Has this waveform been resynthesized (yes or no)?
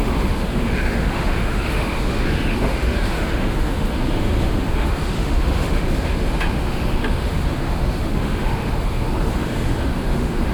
yes